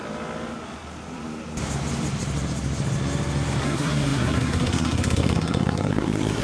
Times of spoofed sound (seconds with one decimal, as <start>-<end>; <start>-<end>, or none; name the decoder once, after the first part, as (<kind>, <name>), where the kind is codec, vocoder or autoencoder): 3.6-6.4 (codec, SNAC)